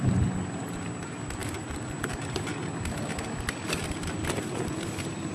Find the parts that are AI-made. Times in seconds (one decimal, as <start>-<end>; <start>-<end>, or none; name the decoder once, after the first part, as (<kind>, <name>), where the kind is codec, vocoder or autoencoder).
none